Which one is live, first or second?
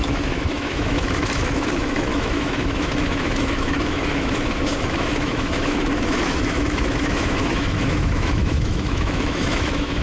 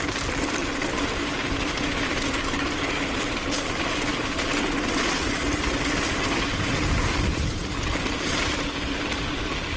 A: second